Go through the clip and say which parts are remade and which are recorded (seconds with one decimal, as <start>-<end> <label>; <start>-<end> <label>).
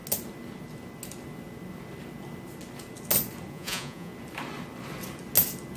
0.0-3.5 recorded; 3.5-4.1 remade; 4.1-5.8 recorded